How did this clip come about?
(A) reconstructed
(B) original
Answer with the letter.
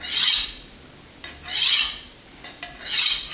B